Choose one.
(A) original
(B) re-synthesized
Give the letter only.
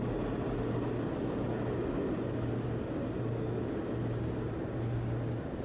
A